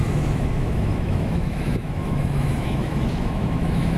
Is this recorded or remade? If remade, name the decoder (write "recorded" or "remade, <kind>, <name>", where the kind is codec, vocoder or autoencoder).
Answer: remade, autoencoder, DAC-VAE